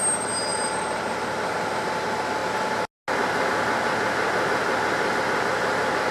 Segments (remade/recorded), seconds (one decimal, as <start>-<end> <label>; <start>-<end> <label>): 0.0-0.5 recorded; 0.5-1.0 remade; 1.0-6.1 recorded